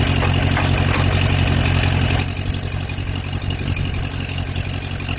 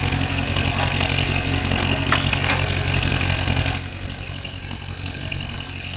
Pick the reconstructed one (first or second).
second